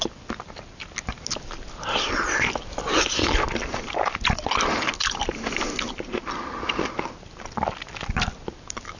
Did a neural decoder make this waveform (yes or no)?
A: no